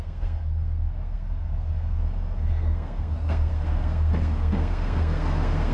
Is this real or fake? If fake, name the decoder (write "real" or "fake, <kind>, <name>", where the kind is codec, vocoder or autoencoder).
fake, codec, SNAC